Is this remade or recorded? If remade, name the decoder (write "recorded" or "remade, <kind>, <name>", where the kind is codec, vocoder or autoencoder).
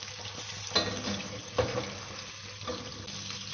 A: recorded